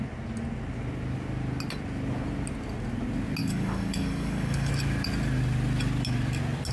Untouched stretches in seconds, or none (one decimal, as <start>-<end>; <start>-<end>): 0.0-3.4; 4.7-6.7